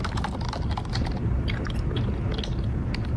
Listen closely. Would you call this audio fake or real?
real